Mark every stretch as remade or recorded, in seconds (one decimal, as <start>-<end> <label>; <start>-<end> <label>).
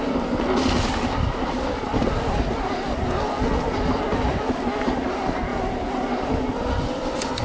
0.0-1.9 recorded; 1.9-2.9 remade; 2.9-5.5 recorded; 5.5-6.3 remade; 6.3-7.4 recorded